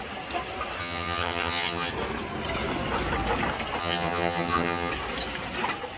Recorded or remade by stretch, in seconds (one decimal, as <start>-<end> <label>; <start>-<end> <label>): 0.0-0.8 recorded; 0.8-1.9 remade; 1.9-3.8 recorded; 3.8-4.9 remade; 4.9-6.0 recorded